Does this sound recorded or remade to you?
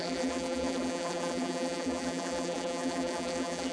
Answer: remade